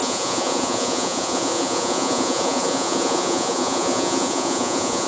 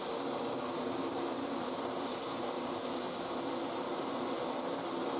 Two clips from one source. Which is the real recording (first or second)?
second